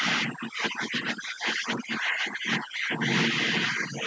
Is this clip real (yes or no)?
yes